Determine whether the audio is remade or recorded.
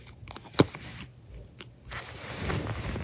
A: recorded